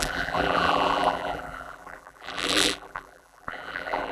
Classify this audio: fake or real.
fake